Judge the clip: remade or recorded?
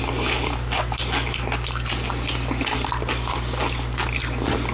recorded